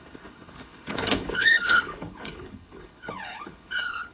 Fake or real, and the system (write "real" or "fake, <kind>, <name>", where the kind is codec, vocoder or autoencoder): fake, codec, HILCodec